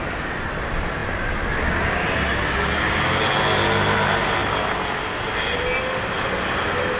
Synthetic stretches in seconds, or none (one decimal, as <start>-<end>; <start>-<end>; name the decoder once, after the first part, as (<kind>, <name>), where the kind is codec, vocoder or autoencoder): none